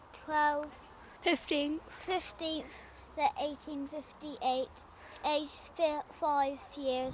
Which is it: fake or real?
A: real